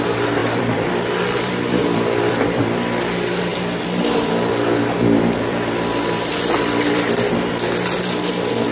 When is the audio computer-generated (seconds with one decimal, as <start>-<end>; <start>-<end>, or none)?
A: 0.4-2.6; 3.5-7.5